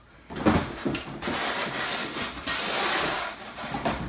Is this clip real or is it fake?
real